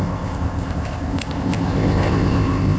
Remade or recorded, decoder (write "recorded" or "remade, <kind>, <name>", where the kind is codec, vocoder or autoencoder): remade, codec, ZipCodec